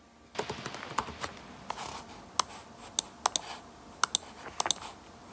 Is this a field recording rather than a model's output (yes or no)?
yes